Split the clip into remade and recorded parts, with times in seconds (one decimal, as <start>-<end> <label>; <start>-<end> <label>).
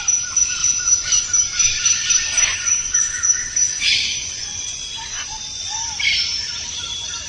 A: 0.0-0.6 recorded; 0.6-1.2 remade; 1.2-2.5 recorded; 2.5-5.8 remade; 5.8-7.3 recorded